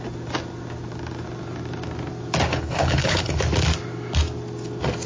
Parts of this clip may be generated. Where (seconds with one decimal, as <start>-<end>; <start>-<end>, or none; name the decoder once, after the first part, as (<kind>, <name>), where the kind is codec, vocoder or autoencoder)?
2.5-3.4 (codec, HILCodec)

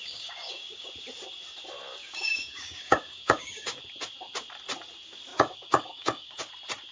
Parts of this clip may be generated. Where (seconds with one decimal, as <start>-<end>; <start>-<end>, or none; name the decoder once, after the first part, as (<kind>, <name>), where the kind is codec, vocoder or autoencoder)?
0.0-0.9 (codec, DAC); 2.0-3.8; 5.3-6.5

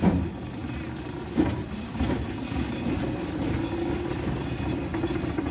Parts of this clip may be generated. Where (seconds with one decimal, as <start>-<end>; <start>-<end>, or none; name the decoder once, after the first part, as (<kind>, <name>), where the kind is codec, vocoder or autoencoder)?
none

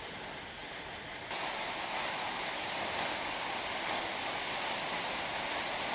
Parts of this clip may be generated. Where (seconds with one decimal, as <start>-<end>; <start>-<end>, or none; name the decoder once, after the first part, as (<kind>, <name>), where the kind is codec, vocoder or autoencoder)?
none

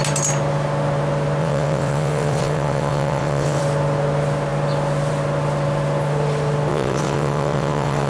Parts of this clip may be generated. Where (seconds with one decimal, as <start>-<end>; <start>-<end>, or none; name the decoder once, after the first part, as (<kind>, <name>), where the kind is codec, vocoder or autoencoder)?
1.4-3.6 (vocoder, WaveNeXt); 6.7-8.1

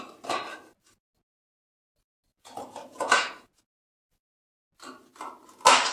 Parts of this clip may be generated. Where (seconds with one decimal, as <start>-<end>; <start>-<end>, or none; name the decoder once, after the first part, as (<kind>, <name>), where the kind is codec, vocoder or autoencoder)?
2.3-4.4 (vocoder, Vocos)